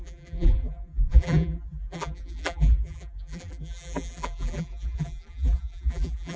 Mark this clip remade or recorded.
remade